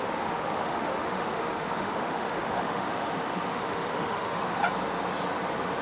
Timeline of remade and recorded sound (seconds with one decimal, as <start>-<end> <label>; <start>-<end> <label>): 0.0-4.6 remade; 4.6-5.8 recorded